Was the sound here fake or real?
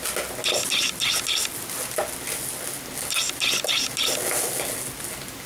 real